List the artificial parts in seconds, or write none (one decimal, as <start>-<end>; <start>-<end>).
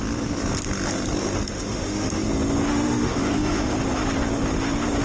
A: 1.5-2.2; 2.7-3.7